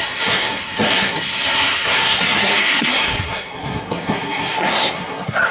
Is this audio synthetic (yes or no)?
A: yes